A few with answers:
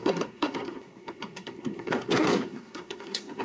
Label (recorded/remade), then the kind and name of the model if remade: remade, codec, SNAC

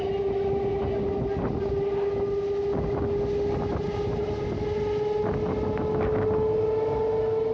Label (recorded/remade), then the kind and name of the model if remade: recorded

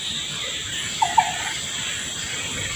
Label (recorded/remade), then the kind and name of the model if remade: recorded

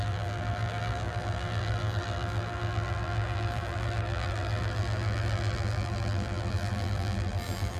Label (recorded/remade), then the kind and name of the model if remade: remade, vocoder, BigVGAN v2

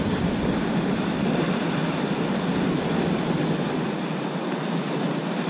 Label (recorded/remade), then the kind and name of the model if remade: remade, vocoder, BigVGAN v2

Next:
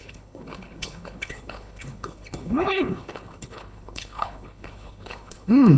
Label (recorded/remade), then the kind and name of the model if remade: remade, codec, HILCodec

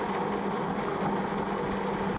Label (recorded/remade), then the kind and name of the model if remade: recorded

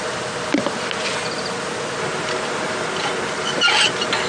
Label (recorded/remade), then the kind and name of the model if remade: recorded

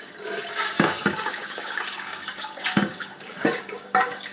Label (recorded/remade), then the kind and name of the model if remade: remade, codec, DAC